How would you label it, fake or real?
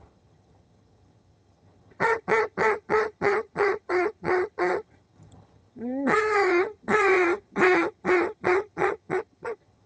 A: fake